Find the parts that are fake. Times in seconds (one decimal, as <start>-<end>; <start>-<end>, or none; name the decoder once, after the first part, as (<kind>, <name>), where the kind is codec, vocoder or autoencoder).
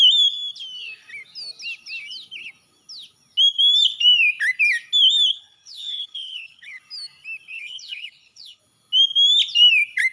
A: 5.3-6.8 (codec, HILCodec); 7.5-8.6